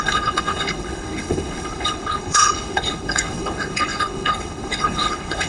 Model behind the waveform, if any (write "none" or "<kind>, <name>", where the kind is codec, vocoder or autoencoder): codec, HILCodec